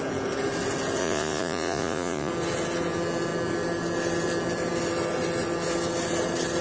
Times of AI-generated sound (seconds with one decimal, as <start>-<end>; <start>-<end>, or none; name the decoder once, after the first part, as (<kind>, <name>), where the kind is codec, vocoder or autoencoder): 1.0-2.3 (vocoder, Vocos)